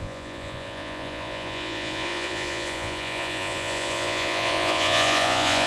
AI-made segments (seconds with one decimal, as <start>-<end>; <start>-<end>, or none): 0.0-5.7